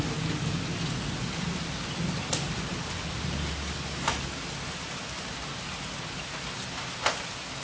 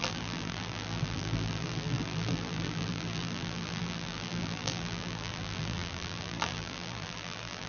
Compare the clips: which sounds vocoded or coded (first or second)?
second